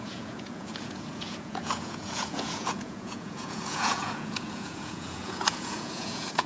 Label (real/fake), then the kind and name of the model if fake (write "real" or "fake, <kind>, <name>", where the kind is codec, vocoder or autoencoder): fake, vocoder, Vocos